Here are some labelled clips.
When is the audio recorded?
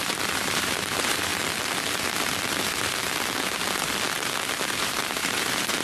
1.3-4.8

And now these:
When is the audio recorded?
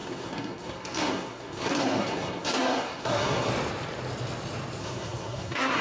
3.5-4.8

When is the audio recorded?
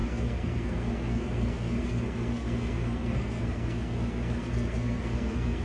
none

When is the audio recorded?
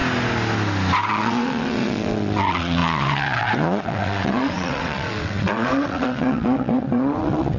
0.0-1.1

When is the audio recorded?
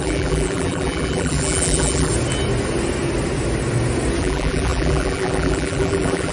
2.1-4.2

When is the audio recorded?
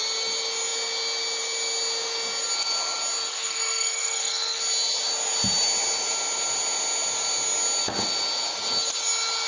0.0-3.3; 4.6-9.5